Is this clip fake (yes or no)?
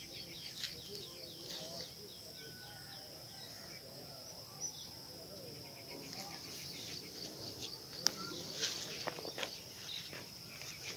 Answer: no